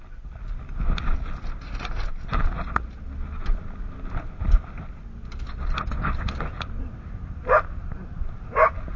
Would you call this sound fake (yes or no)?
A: no